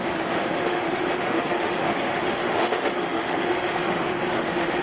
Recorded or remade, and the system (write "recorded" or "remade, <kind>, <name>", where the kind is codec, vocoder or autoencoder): remade, autoencoder, DAC-VAE